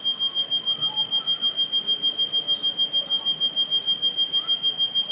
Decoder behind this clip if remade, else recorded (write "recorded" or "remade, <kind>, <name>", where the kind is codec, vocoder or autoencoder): recorded